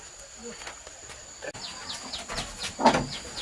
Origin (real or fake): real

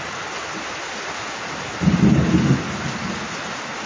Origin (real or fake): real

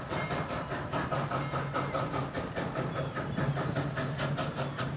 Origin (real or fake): real